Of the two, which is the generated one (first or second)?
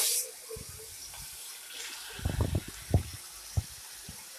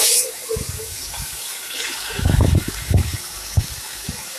second